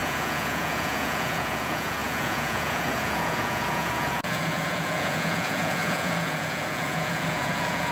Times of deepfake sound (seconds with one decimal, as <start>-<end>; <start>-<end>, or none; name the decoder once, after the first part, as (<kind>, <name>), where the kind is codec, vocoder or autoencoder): 0.0-7.9 (vocoder, Vocos)